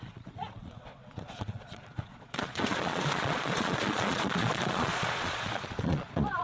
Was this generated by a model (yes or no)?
yes